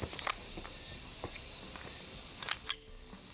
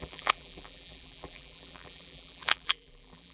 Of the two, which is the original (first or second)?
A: first